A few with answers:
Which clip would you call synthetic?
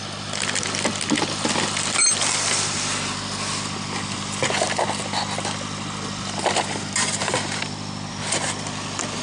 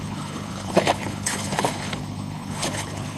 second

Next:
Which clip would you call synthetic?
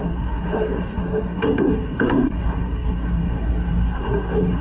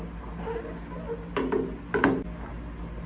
first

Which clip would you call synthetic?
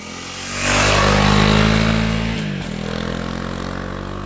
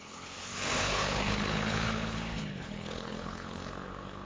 second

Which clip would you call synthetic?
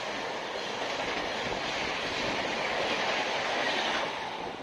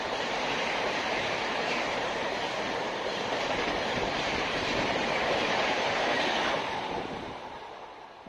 second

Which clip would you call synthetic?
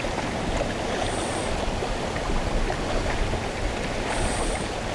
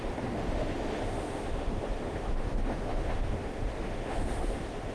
second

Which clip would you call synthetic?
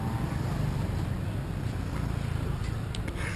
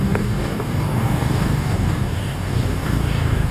second